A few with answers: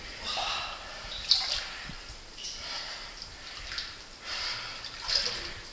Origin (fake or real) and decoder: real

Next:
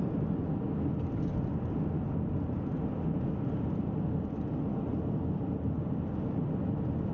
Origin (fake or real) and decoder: real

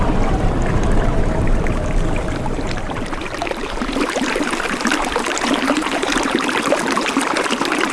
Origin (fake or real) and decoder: fake, vocoder, BigVGAN v2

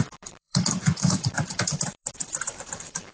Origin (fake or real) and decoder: fake, vocoder, BigVGAN v2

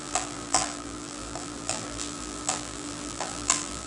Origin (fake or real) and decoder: fake, vocoder, BigVGAN v2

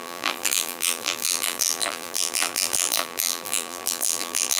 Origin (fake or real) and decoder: fake, vocoder, BigVGAN v2